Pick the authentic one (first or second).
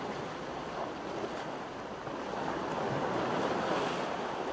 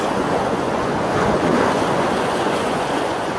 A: first